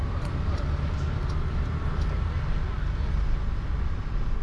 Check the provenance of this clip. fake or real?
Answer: real